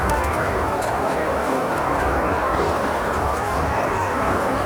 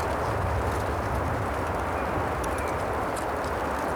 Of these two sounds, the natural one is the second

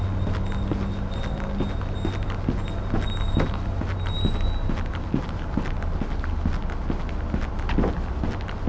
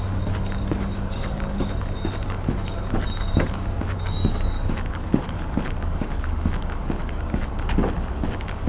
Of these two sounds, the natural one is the first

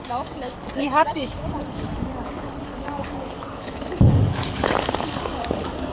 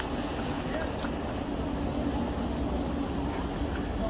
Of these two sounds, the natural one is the second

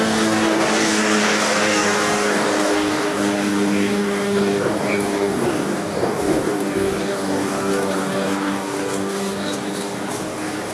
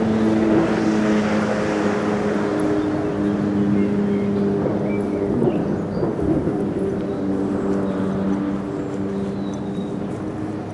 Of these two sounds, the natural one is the second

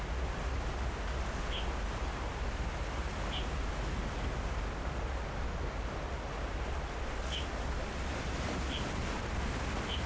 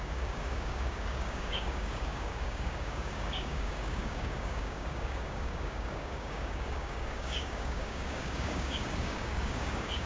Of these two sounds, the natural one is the first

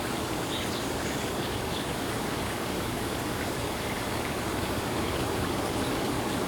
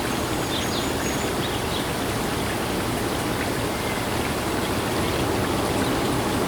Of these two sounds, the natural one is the second